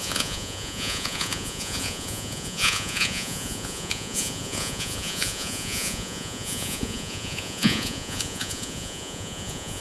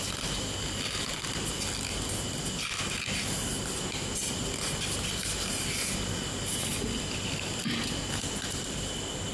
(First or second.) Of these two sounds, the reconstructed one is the first